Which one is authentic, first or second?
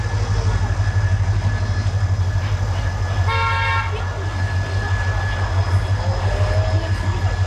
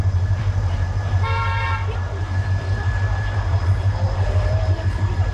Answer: first